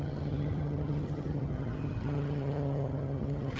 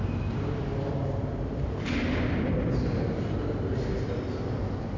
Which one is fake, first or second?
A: first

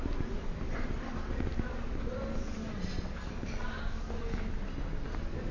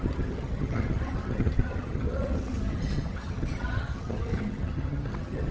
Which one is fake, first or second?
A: second